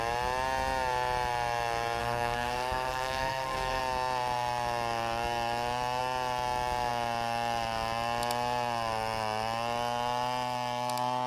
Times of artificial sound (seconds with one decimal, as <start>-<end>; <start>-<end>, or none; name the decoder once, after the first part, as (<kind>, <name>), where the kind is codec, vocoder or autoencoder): 2.0-3.8 (codec, SNAC)